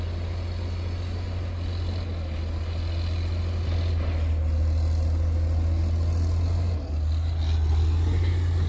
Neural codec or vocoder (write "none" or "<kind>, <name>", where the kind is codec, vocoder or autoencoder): none